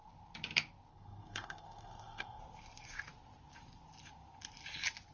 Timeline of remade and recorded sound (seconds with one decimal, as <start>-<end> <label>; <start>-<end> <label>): 0.0-0.9 recorded; 0.9-2.4 remade; 2.4-5.1 recorded